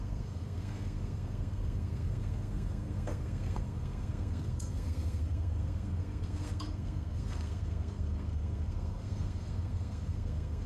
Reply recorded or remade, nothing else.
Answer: remade